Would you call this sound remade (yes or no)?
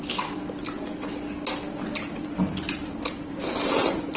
no